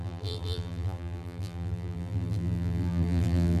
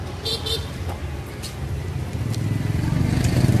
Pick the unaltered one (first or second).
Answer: second